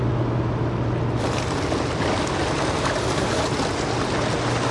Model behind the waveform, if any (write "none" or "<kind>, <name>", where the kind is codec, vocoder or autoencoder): none